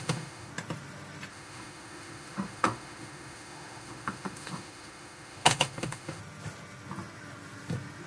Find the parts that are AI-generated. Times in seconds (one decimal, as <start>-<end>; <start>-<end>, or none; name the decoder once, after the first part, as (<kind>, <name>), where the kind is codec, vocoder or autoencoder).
0.0-0.5 (autoencoder, DAC-VAE); 1.3-6.2